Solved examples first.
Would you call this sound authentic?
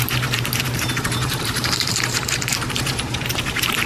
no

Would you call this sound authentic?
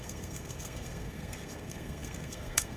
no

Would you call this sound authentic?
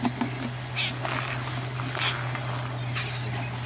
yes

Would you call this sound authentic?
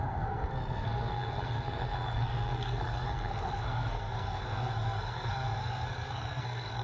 no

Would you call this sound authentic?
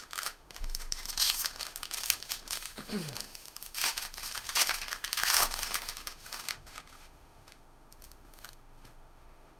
no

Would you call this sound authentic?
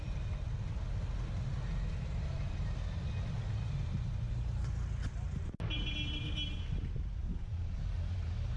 yes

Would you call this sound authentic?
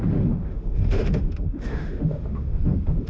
no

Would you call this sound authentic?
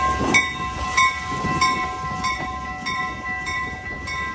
yes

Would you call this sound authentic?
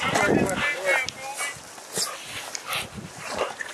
yes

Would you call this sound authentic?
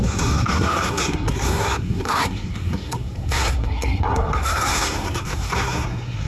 no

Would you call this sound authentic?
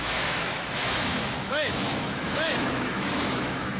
no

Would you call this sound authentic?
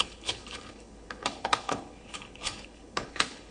no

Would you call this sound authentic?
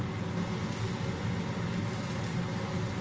yes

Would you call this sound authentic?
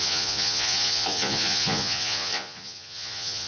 no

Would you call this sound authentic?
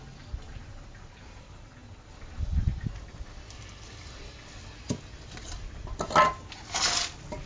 yes